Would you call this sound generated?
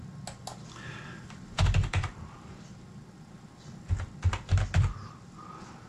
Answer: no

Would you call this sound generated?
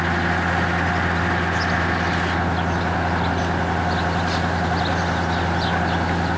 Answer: no